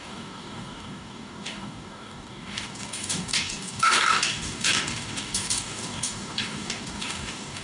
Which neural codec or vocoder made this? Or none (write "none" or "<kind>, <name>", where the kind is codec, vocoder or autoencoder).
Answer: codec, DAC